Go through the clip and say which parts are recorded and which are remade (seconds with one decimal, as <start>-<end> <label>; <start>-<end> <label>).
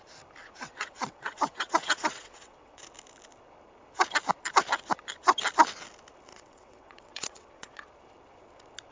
0.0-0.4 recorded; 0.4-2.8 remade; 2.8-6.3 recorded; 6.3-7.9 remade; 7.9-8.9 recorded